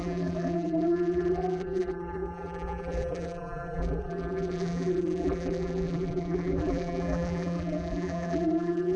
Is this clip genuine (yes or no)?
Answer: no